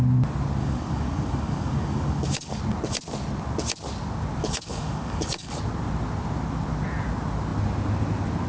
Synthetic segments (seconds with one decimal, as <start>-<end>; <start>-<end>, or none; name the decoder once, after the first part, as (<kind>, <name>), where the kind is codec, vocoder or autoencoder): 0.6-2.6 (codec, DAC); 4.4-5.6